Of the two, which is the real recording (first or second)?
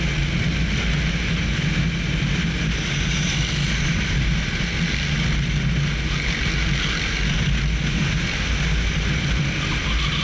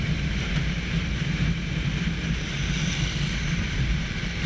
first